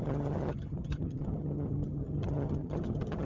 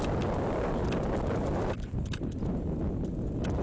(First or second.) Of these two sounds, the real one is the second